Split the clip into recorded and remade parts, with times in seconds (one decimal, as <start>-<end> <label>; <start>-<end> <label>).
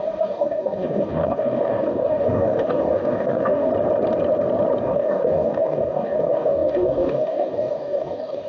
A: 0.0-3.7 remade; 3.7-4.8 recorded; 4.8-8.5 remade